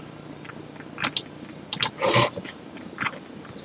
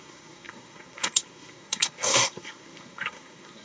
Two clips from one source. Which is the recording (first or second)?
first